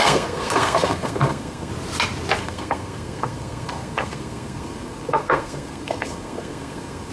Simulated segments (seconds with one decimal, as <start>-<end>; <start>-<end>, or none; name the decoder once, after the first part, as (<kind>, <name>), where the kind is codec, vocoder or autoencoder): 0.0-1.7 (codec, SNAC); 2.4-7.1